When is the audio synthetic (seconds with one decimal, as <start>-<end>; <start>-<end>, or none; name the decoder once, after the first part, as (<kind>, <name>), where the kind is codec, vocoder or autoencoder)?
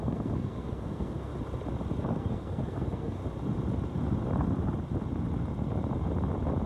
0.0-1.3 (codec, SNAC); 2.0-3.2